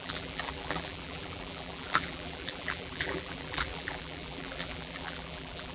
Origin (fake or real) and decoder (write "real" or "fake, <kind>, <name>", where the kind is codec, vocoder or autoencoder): fake, vocoder, BigVGAN v2